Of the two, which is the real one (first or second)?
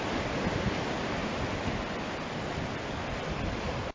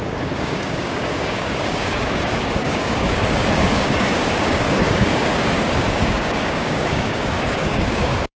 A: first